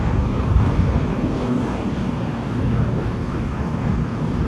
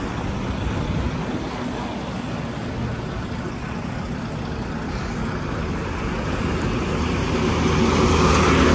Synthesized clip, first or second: first